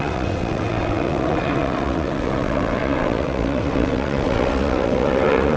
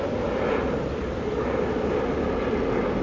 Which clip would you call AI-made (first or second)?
first